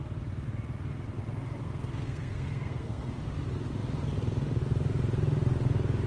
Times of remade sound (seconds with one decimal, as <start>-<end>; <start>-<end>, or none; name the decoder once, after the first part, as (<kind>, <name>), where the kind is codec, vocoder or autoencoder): 1.6-3.1 (codec, SNAC)